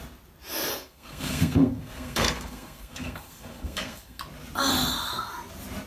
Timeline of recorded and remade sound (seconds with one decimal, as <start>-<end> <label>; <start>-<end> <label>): 0.0-0.7 recorded; 0.7-4.2 remade; 4.2-5.9 recorded